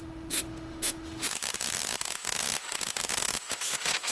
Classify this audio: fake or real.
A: fake